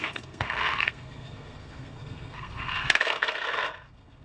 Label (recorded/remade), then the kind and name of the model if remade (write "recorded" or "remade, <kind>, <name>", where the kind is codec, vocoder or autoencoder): remade, codec, SNAC